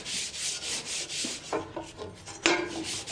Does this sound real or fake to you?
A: real